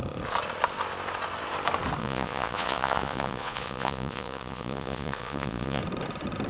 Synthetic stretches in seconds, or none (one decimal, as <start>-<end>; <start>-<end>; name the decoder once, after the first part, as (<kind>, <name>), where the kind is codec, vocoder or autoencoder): 2.0-5.8 (vocoder, Vocos)